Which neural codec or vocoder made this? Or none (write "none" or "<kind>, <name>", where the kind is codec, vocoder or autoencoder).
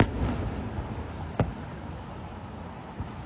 none